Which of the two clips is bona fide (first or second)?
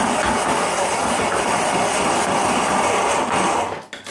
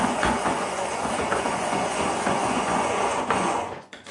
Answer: first